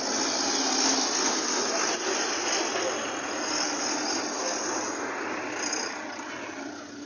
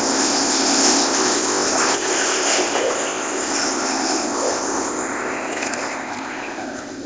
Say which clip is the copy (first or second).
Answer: second